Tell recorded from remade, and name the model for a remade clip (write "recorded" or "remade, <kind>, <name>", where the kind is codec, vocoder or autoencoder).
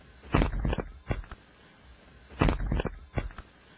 recorded